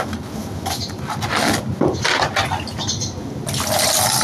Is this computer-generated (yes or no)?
no